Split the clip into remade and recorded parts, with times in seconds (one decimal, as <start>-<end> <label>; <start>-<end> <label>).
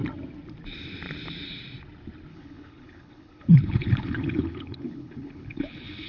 0.0-2.3 recorded; 2.3-6.1 remade